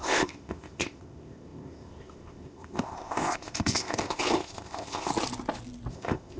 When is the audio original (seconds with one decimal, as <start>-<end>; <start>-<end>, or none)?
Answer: 5.1-5.9